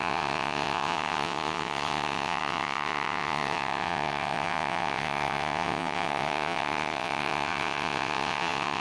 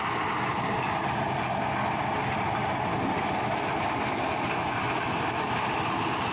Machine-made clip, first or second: first